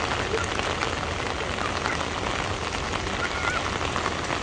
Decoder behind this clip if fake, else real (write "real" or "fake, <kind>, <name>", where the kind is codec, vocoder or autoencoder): real